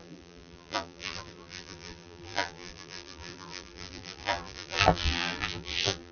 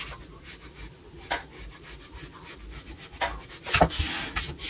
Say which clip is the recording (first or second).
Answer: second